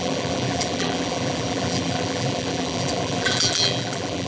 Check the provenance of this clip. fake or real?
fake